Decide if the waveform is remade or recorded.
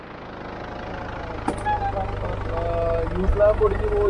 recorded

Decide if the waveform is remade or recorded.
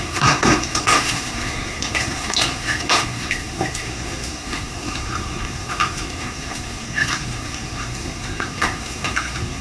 remade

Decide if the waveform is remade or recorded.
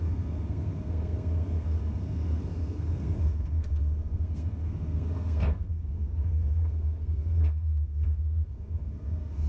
remade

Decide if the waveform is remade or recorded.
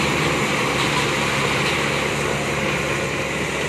recorded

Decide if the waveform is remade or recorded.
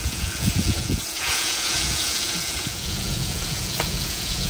remade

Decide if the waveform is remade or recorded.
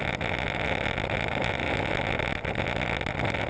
recorded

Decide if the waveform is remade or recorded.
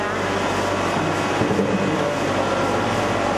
recorded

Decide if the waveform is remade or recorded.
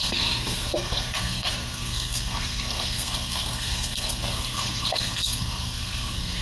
remade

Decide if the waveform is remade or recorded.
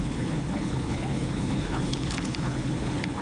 remade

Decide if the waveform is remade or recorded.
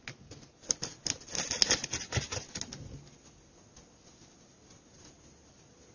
recorded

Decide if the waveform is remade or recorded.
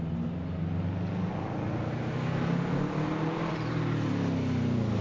recorded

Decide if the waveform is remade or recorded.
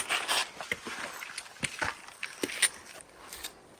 recorded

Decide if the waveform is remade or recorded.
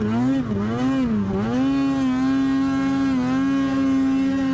recorded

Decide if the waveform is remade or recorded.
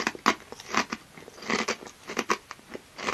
recorded